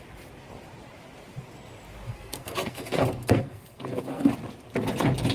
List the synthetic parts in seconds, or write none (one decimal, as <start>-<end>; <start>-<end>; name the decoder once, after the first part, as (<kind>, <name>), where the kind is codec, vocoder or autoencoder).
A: 2.1-4.3 (codec, SNAC)